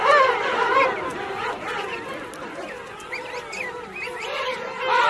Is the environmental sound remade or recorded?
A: recorded